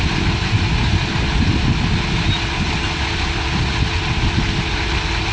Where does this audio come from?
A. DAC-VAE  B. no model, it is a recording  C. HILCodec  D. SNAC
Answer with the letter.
B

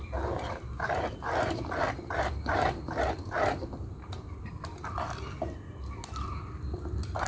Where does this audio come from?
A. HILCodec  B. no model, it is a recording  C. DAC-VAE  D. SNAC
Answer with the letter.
B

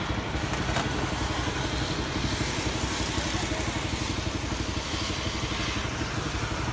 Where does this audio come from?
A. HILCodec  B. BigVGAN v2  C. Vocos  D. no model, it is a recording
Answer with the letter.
D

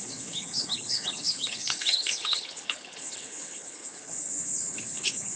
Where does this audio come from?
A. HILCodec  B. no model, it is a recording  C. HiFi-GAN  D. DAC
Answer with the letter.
A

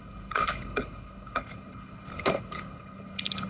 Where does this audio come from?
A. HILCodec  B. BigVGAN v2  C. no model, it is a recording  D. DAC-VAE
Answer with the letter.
A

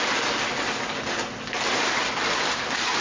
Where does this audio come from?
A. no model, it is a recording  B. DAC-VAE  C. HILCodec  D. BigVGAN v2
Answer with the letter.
A